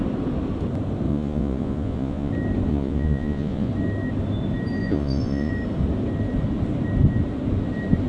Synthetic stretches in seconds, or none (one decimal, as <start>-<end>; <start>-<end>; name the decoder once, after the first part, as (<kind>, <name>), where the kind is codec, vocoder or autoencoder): 1.1-2.3 (vocoder, Vocos); 2.7-3.7; 4.8-5.5